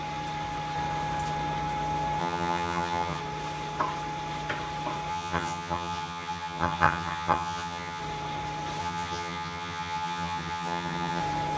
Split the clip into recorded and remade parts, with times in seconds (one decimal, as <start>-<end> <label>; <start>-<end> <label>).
0.0-2.2 recorded; 2.2-3.2 remade; 3.2-5.1 recorded; 5.1-8.0 remade; 8.0-8.8 recorded; 8.8-11.2 remade; 11.2-11.6 recorded